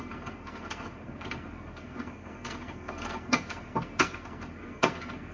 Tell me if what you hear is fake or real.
fake